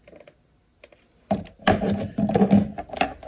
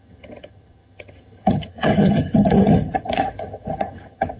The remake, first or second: second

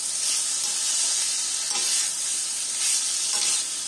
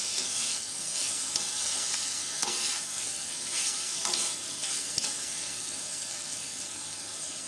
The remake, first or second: second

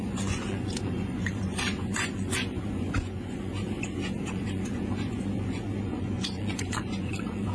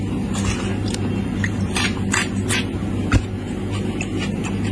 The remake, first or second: first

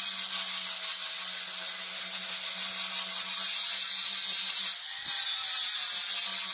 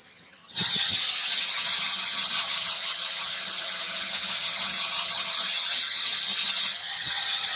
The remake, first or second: second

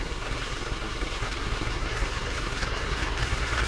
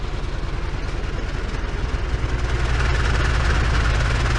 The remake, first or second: first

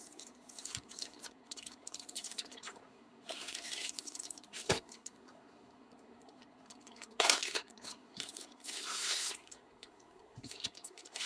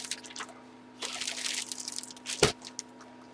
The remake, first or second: first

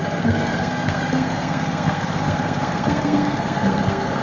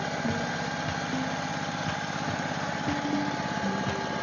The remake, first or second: first